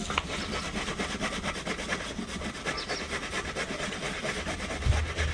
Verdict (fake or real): real